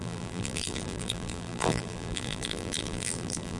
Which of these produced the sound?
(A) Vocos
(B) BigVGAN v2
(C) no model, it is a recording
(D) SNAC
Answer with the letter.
B